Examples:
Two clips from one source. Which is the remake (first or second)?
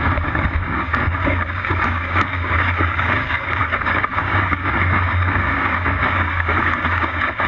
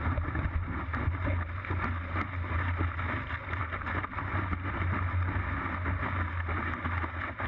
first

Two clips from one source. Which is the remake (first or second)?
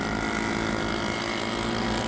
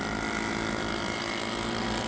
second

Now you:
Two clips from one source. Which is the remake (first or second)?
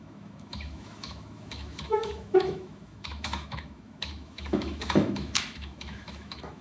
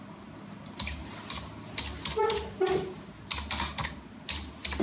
first